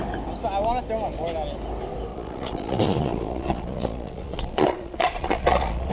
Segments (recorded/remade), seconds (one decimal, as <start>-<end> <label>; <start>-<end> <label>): 0.0-2.1 recorded; 2.1-5.9 remade